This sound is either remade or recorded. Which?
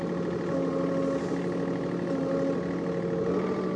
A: recorded